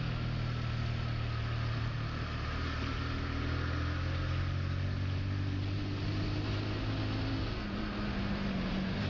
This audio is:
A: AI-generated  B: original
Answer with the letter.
B